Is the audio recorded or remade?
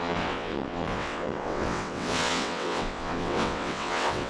remade